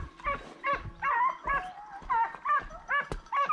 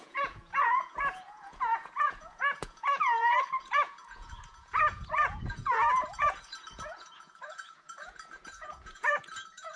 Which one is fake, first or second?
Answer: second